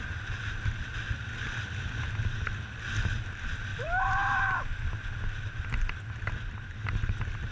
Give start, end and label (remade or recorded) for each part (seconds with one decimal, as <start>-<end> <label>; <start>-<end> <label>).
0.0-3.7 recorded; 3.7-4.4 remade; 4.4-7.5 recorded

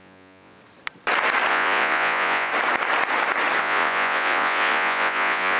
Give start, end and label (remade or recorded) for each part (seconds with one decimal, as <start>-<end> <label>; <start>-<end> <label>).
0.0-0.6 remade; 0.6-1.5 recorded; 1.5-2.5 remade; 2.5-3.6 recorded; 3.6-5.6 remade

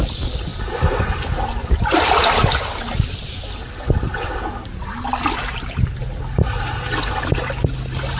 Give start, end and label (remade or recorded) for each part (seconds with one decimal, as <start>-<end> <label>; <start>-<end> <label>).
0.0-8.2 recorded